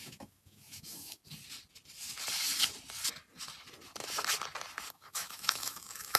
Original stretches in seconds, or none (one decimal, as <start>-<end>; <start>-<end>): 1.2-4.9